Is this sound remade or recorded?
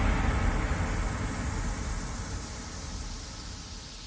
recorded